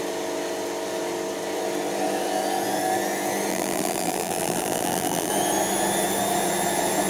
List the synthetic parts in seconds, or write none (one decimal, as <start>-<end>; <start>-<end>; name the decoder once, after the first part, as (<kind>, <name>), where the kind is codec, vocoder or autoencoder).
3.5-5.3 (vocoder, BigVGAN v2)